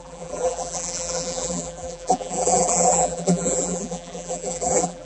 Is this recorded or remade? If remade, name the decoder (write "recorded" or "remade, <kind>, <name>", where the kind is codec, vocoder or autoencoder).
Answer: remade, vocoder, BigVGAN v2